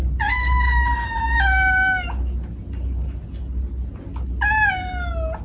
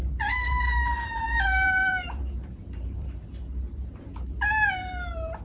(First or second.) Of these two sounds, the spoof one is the second